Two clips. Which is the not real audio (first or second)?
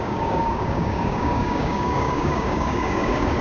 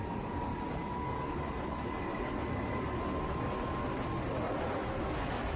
first